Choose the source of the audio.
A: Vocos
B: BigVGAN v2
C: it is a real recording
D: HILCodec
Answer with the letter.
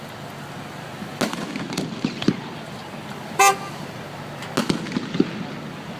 C